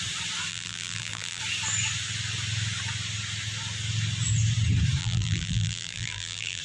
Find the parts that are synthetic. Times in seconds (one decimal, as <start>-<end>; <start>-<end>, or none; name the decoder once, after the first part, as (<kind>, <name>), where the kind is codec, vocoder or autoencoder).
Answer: 0.5-1.4 (vocoder, BigVGAN v2); 5.0-6.6